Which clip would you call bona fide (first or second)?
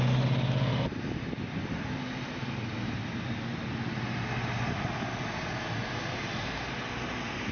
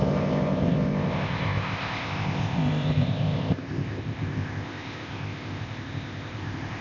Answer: first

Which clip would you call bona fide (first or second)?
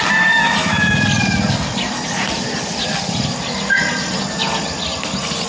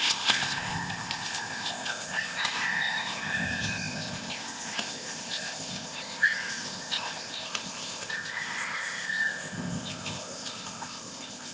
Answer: first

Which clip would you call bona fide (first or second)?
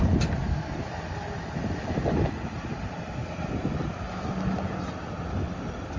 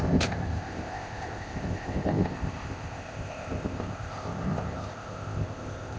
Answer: first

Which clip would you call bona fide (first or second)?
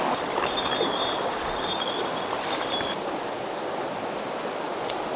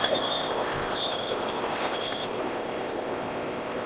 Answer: first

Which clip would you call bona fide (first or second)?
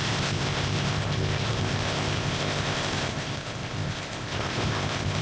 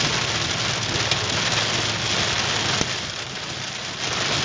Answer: second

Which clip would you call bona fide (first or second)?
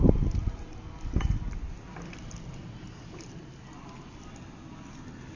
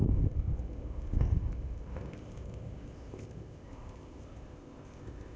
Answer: first